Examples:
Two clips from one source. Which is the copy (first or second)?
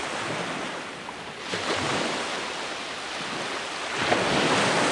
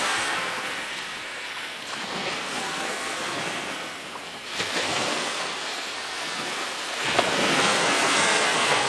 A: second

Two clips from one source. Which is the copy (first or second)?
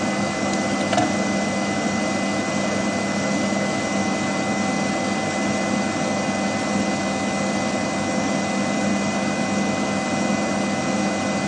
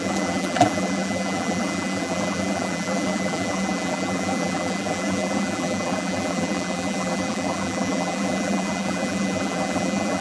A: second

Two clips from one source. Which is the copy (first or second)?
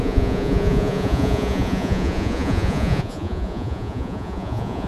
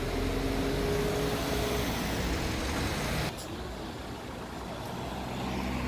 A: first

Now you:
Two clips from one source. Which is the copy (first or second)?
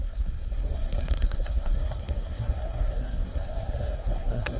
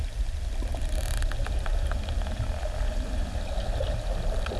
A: first